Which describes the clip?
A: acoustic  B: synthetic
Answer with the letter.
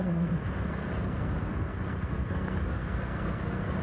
B